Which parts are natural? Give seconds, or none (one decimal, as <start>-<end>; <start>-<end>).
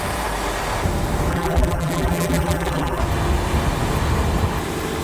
0.0-1.3; 3.0-5.0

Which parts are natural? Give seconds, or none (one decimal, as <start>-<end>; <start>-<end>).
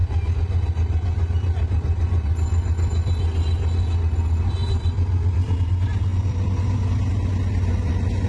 0.0-4.6; 5.6-6.1; 6.6-8.3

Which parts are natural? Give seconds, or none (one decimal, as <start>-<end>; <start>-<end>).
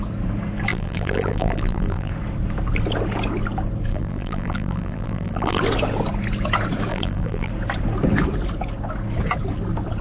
0.0-0.7; 2.1-3.9; 5.6-6.9; 7.5-10.0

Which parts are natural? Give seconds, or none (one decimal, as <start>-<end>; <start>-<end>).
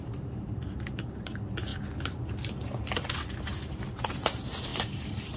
1.7-3.1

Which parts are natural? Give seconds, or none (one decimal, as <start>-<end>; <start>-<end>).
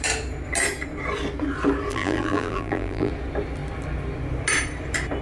0.0-1.9; 3.1-5.2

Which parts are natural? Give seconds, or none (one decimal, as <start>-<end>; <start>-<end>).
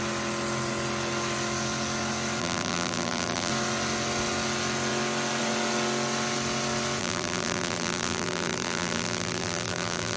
0.0-2.4; 3.5-7.0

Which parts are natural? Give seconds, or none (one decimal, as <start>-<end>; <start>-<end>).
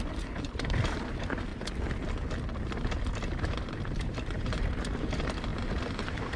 1.5-3.0